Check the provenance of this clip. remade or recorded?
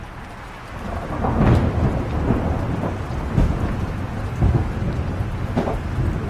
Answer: recorded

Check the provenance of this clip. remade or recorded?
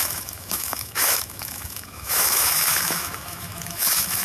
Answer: remade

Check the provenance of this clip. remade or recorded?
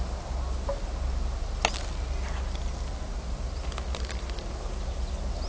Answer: recorded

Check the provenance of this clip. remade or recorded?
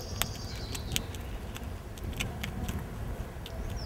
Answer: recorded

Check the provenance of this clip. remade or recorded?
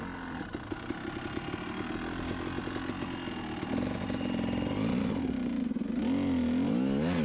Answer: recorded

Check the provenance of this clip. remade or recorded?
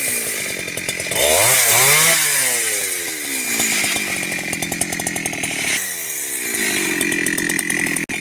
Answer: recorded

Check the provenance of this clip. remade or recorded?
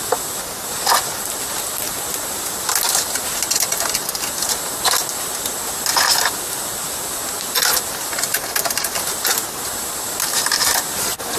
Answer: recorded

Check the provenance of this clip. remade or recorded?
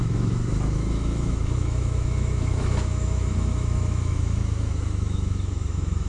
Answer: remade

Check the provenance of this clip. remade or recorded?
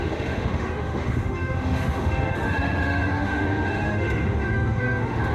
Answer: remade